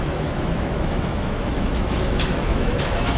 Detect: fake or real fake